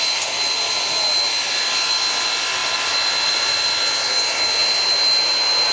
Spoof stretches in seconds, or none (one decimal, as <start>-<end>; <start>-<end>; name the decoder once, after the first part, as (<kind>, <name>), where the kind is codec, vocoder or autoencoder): none